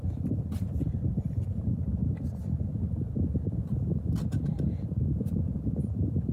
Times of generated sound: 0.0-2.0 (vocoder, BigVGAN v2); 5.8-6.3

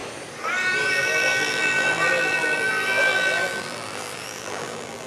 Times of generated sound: 0.9-5.1 (vocoder, BigVGAN v2)

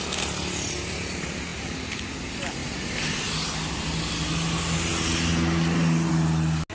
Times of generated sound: 2.6-3.2 (vocoder, BigVGAN v2)

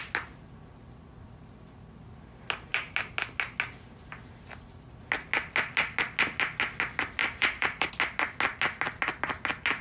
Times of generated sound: 7.2-7.9 (vocoder, BigVGAN v2)